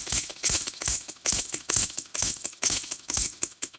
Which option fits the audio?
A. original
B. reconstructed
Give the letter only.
B